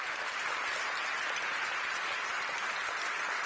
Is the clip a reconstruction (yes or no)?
no